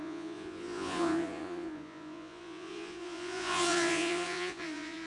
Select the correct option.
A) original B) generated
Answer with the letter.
B